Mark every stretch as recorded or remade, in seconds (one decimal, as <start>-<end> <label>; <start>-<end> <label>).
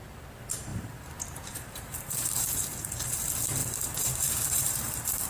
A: 0.0-0.7 recorded; 0.7-2.9 remade; 2.9-3.6 recorded; 3.6-5.3 remade